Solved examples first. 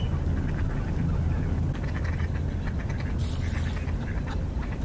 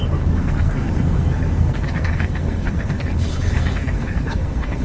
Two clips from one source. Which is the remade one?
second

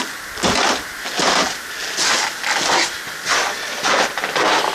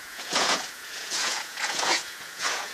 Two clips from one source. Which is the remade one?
second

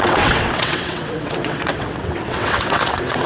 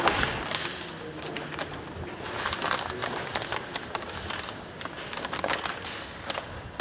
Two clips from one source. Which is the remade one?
first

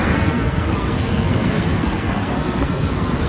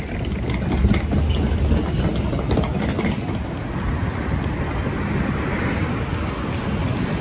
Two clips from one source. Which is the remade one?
first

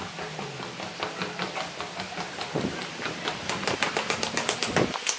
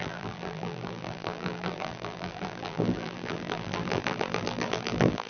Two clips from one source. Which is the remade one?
second